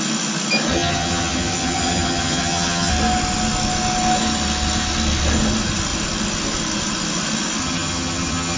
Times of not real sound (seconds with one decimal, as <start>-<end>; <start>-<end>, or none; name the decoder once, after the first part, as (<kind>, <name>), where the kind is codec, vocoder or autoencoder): 0.7-2.9 (vocoder, HiFi-GAN); 7.6-8.6